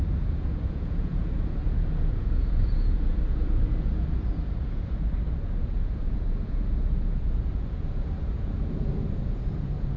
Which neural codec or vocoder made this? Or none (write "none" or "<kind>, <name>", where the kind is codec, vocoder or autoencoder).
vocoder, Vocos